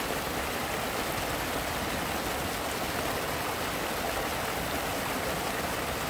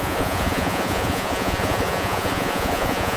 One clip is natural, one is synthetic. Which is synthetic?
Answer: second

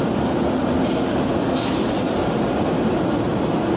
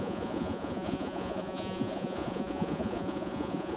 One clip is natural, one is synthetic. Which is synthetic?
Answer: second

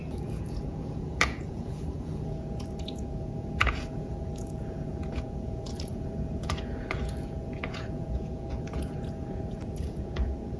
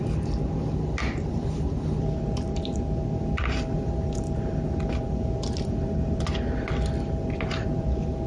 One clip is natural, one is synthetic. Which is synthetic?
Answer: first